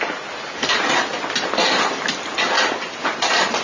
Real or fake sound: real